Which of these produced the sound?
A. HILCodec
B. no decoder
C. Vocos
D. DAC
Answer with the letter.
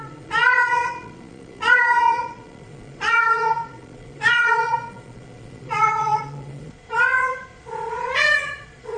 C